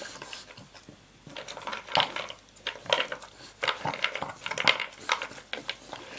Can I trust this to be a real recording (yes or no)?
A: yes